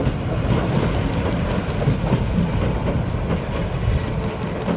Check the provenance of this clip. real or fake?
real